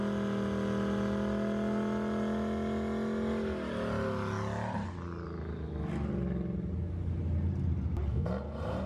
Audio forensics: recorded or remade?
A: recorded